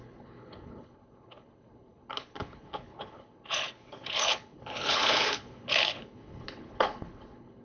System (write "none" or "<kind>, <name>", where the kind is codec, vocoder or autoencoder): codec, HILCodec